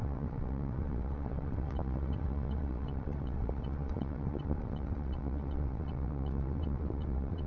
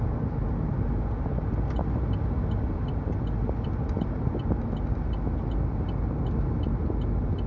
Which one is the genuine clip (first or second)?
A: second